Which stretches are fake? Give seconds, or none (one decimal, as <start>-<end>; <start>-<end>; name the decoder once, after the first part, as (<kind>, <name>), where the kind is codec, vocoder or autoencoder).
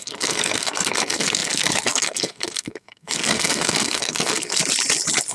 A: 0.0-4.6 (codec, SNAC)